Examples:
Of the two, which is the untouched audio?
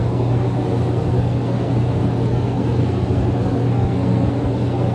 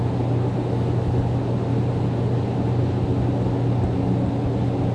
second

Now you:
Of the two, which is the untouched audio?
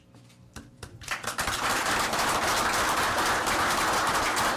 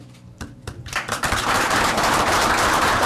first